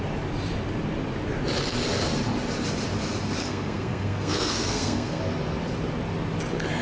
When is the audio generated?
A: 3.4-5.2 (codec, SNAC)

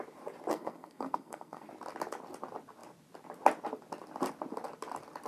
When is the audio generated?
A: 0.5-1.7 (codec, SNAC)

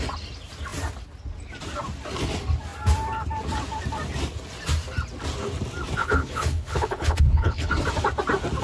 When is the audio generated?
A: 6.0-7.7 (codec, HILCodec)